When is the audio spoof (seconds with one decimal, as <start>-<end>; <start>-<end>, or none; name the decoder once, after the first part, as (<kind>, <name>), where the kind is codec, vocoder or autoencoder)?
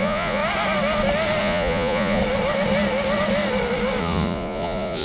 0.0-0.4 (vocoder, Vocos); 1.4-2.2; 4.0-5.0